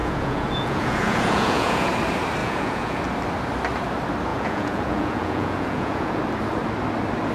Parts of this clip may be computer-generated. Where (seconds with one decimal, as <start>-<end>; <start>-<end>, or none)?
0.0-1.9; 2.4-3.0; 4.3-6.2